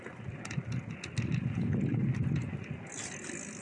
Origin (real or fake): real